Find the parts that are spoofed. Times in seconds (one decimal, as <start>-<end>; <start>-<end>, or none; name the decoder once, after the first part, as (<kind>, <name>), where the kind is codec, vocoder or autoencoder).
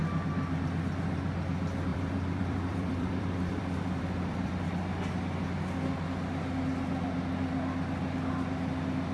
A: 1.9-4.5 (vocoder, BigVGAN v2)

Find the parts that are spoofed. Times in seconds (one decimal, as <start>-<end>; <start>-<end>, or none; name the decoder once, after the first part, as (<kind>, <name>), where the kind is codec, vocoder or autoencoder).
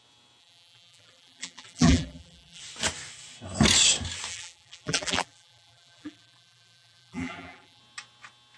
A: 0.4-2.6 (vocoder, BigVGAN v2); 4.3-7.8